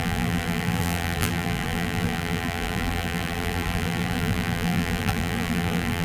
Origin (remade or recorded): remade